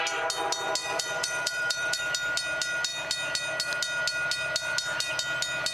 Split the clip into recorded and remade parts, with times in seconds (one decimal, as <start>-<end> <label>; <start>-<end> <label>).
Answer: 0.0-0.8 recorded; 0.8-2.0 remade; 2.0-5.7 recorded